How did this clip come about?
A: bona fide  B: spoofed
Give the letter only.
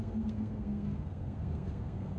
B